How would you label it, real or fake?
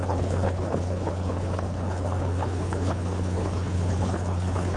fake